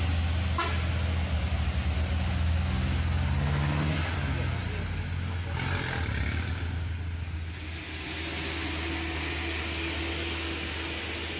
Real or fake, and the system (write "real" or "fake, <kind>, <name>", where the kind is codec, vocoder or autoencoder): real